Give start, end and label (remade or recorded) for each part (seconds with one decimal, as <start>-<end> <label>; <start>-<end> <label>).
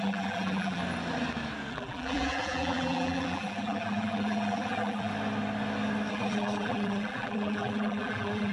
0.0-0.8 remade; 0.8-1.7 recorded; 1.7-5.1 remade; 5.1-6.1 recorded; 6.1-8.5 remade